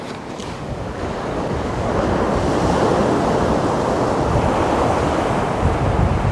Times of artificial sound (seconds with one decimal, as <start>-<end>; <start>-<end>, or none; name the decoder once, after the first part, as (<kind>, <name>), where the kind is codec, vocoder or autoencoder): 0.4-1.9 (codec, DAC)